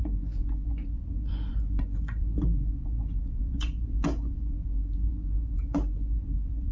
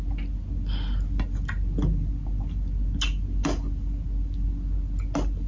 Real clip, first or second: second